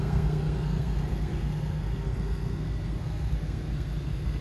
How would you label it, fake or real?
fake